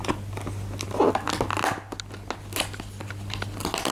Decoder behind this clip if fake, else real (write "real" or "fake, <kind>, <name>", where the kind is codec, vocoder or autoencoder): real